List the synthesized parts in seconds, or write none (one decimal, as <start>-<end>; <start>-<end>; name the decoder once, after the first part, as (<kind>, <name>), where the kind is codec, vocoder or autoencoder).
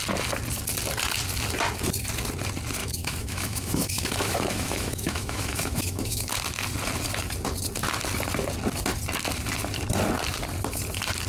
2.8-6.3 (autoencoder, DAC-VAE)